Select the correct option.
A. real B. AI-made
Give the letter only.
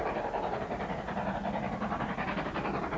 A